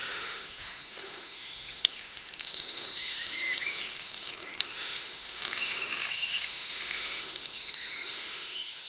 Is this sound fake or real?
fake